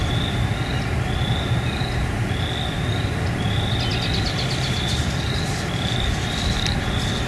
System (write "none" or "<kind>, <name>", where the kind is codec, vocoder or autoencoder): none